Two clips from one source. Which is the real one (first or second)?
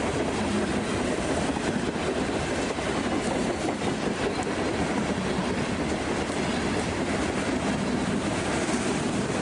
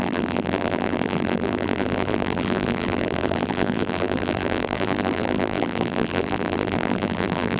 first